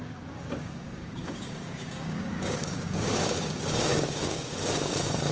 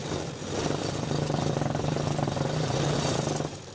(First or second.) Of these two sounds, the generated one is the first